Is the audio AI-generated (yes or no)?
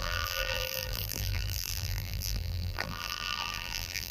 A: yes